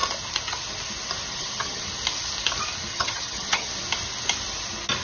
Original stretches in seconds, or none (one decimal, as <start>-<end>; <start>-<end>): 0.0-1.3; 1.8-2.9; 3.7-5.0